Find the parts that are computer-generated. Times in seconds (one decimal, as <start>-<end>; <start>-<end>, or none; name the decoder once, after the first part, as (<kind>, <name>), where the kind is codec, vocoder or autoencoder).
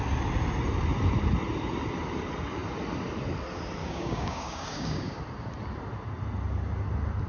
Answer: 3.8-5.2 (codec, DAC)